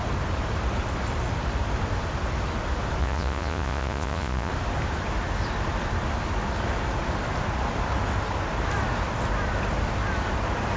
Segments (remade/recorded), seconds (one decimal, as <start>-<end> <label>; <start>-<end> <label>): 0.0-3.0 recorded; 3.0-4.5 remade; 4.5-10.8 recorded